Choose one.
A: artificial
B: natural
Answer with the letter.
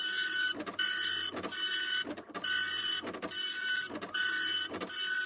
B